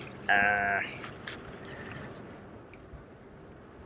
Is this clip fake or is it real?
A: real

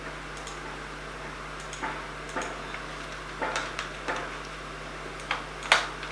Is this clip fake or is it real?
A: real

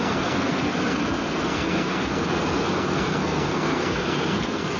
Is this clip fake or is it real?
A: fake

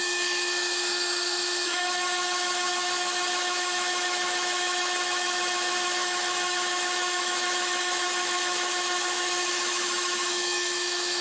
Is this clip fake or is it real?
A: fake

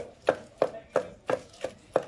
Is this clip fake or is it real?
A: real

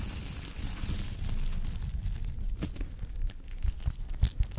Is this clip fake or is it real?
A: real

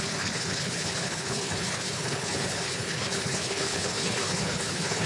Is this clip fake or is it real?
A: fake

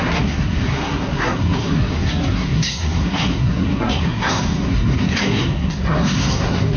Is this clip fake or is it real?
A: fake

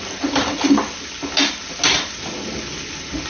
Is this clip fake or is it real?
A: real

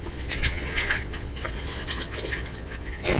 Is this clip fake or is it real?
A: fake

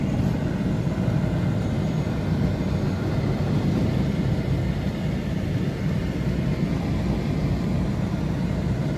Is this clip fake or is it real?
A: real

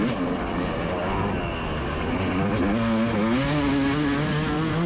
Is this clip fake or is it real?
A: real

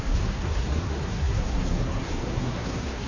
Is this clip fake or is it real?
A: fake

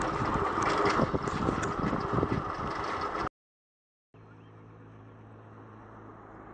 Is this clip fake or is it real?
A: real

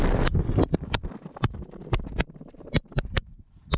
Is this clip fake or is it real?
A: real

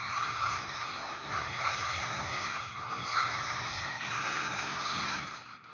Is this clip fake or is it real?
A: fake